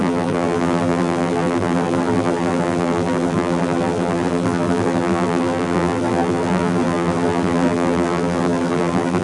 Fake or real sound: fake